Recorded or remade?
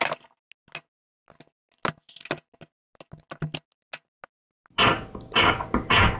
recorded